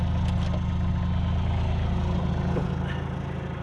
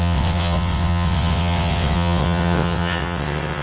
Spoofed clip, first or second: second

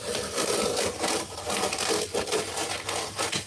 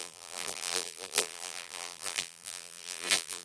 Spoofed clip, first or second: second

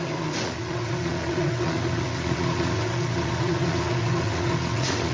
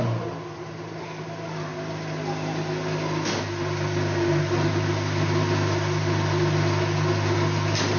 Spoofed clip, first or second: first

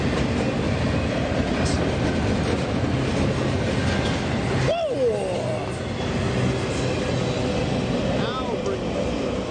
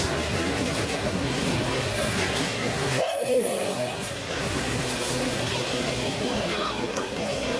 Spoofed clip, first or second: second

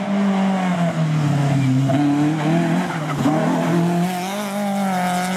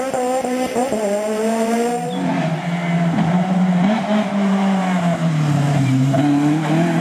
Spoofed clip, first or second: second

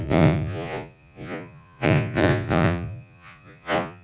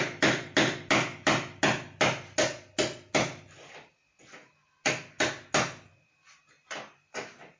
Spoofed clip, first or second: first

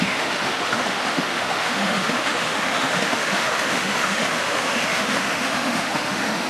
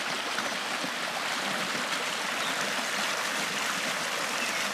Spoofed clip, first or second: first